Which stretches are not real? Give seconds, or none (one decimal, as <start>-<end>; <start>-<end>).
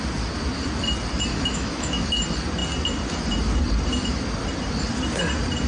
1.3-2.2